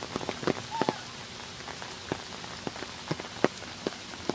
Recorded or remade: recorded